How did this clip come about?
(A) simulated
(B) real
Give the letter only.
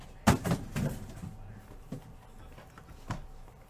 B